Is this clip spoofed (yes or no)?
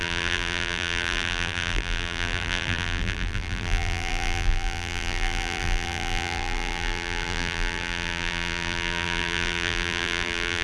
yes